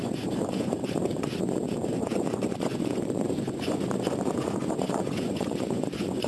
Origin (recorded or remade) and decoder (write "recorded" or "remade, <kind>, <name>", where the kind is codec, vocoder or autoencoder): remade, vocoder, Vocos